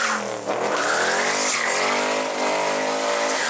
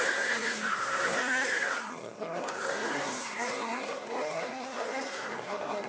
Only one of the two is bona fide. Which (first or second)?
first